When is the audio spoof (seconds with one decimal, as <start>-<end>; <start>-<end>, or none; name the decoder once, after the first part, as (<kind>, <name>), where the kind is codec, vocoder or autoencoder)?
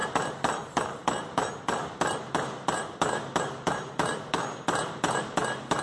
none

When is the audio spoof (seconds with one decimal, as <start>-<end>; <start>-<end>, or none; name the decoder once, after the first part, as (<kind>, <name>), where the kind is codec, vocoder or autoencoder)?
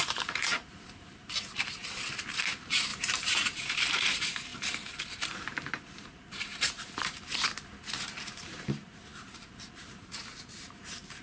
0.0-4.5 (vocoder, BigVGAN v2); 5.8-11.2